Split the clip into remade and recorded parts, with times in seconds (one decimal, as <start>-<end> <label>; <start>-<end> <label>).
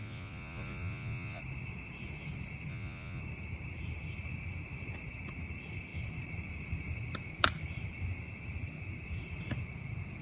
0.0-1.4 remade; 1.4-2.7 recorded; 2.7-3.2 remade; 3.2-10.2 recorded